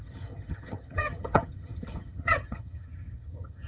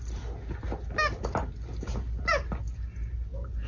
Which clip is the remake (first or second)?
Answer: first